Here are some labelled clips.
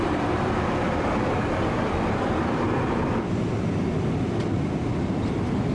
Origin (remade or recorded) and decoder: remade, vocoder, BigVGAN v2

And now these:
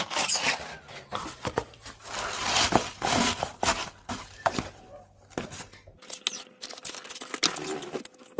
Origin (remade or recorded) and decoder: recorded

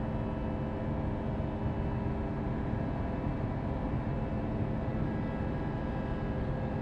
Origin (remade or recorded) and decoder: recorded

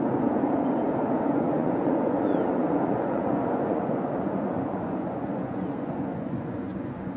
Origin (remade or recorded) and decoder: remade, vocoder, Vocos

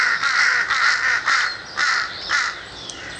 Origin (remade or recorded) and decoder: remade, vocoder, BigVGAN v2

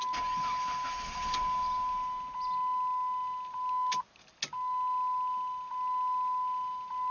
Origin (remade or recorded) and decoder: recorded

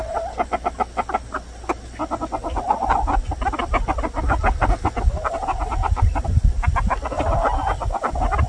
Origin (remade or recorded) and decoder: recorded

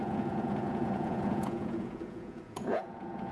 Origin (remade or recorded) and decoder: remade, vocoder, Vocos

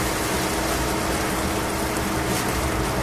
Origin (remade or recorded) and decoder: recorded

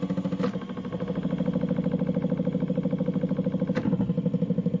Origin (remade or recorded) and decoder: recorded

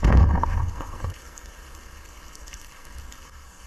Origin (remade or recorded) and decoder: remade, codec, SNAC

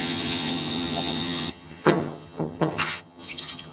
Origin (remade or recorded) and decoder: remade, vocoder, HiFi-GAN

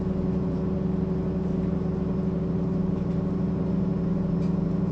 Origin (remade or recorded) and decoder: recorded